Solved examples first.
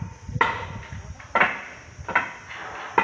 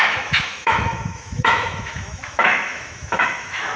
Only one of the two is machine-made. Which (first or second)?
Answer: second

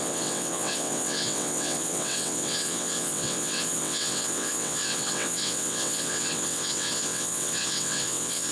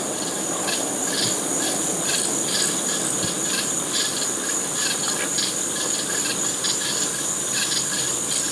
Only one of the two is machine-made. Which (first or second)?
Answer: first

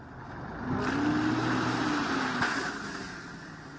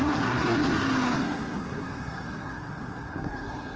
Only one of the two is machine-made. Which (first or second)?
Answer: second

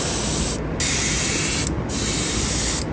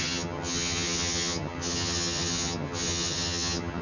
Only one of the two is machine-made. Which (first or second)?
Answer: second